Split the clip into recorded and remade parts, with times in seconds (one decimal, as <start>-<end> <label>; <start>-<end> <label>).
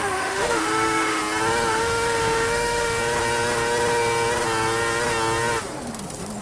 0.0-1.2 remade; 1.2-1.7 recorded; 1.7-3.0 remade; 3.0-6.4 recorded